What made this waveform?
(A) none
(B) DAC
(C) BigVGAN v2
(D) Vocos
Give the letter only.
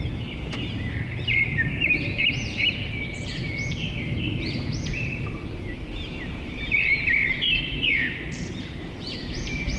C